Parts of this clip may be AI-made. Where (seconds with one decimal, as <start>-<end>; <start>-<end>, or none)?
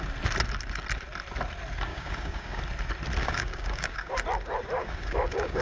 1.9-2.6; 3.2-4.1; 4.8-5.6